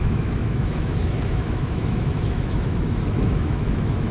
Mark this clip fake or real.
fake